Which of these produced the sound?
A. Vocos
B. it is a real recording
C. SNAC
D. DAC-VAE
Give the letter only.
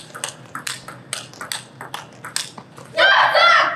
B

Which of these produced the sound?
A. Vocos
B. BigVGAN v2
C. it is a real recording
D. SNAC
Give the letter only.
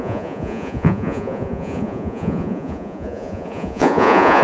A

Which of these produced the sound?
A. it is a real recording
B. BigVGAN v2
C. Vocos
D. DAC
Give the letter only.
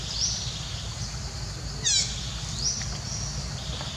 A